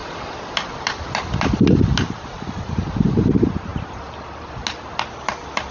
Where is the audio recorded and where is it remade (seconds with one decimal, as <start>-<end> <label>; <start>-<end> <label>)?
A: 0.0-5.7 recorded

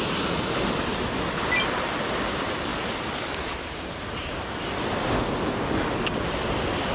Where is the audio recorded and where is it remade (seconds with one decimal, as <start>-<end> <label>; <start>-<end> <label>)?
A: 0.0-0.9 recorded; 0.9-2.2 remade; 2.2-2.7 recorded; 2.7-3.5 remade; 3.5-6.9 recorded

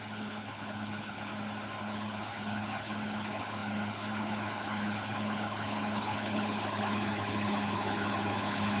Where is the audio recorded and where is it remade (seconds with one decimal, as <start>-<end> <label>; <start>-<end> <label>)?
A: 0.0-1.3 remade; 1.3-1.8 recorded; 1.8-8.8 remade

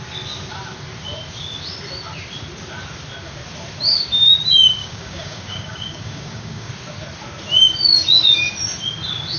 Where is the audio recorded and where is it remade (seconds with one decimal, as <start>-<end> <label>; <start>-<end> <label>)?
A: 0.0-4.8 recorded; 4.8-6.7 remade; 6.7-9.4 recorded